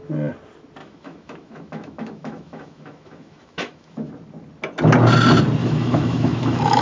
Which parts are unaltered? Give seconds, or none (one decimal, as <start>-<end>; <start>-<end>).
0.0-0.8; 4.1-5.6